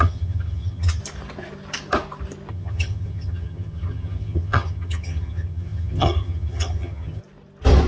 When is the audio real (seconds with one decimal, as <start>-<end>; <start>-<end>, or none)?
1.0-2.5; 7.2-7.9